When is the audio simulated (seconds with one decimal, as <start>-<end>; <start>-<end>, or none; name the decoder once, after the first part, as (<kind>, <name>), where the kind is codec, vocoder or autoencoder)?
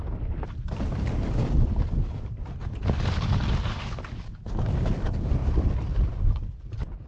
none